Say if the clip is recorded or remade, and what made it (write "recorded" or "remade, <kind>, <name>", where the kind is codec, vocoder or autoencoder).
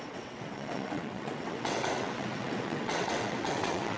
remade, vocoder, WaveNeXt